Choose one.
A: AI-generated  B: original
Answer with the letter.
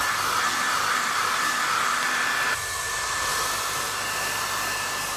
B